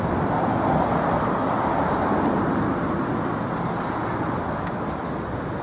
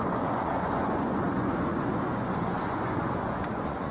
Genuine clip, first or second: first